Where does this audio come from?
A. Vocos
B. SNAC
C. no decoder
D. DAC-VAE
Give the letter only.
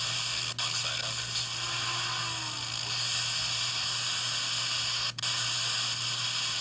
C